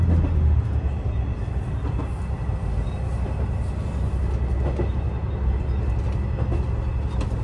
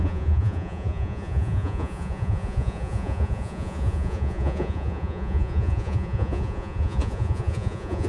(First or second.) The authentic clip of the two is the first